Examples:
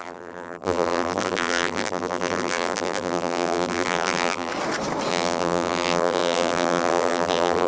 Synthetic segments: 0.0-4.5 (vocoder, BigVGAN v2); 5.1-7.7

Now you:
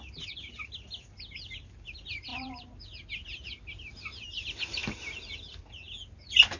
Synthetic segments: 2.3-2.8 (vocoder, BigVGAN v2); 4.8-5.6

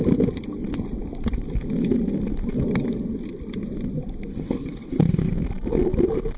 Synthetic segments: 4.3-5.3 (codec, HILCodec)

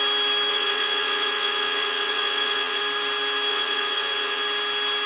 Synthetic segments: 0.5-2.8 (vocoder, WaveNeXt); 3.5-4.4

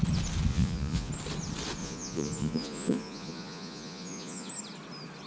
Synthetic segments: 0.5-1.1 (vocoder, Vocos); 1.8-4.5

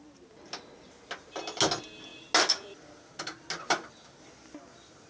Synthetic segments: none

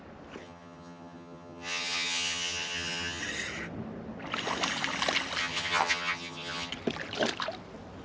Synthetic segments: 0.4-3.2 (vocoder, HiFi-GAN); 5.4-6.7